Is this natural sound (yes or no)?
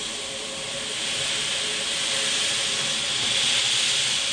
yes